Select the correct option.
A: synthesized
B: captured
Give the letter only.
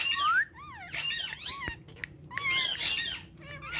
B